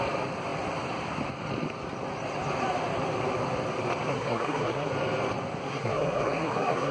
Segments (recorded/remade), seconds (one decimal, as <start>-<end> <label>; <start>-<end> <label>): 0.0-4.1 recorded; 4.1-4.9 remade; 4.9-5.7 recorded; 5.7-6.9 remade